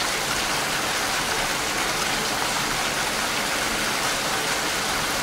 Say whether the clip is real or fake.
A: real